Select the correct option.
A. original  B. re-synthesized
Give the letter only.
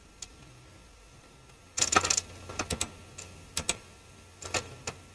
A